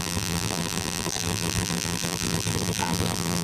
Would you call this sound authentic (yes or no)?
no